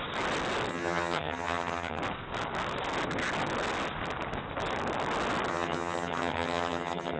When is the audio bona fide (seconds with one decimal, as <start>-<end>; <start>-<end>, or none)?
0.0-0.7; 2.0-5.5